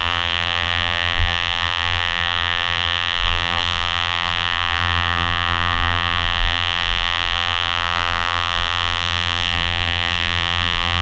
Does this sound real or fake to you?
fake